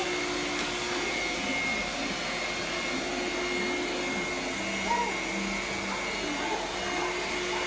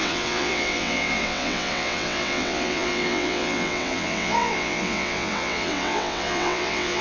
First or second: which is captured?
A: first